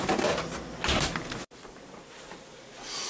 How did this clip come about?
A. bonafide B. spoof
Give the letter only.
A